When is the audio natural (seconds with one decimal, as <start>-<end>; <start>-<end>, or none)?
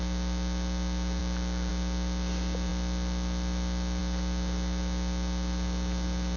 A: 0.0-6.4